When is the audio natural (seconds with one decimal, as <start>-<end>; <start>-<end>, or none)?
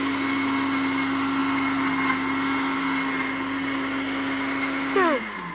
0.0-5.5